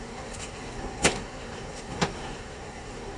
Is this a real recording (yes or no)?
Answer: no